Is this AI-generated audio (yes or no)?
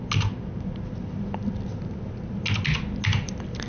no